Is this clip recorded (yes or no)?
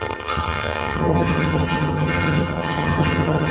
no